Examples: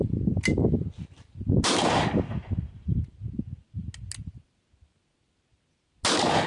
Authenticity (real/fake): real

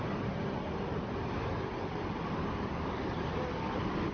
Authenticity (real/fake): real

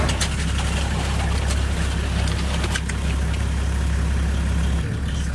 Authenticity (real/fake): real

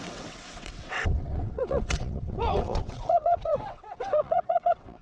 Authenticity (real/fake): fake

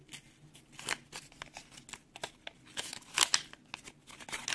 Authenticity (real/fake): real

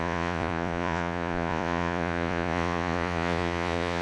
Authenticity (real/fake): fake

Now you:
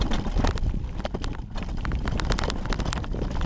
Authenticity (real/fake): real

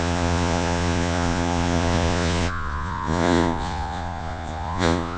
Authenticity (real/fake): fake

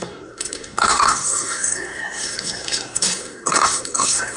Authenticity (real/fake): fake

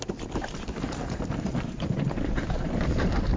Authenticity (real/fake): fake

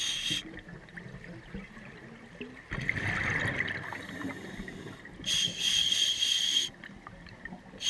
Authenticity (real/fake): real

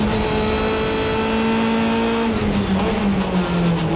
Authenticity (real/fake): real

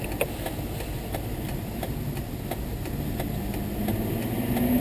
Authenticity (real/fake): real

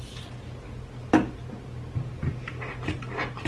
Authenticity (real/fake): real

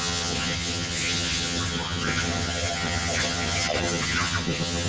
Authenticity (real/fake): fake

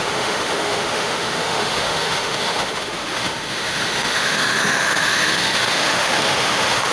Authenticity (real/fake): fake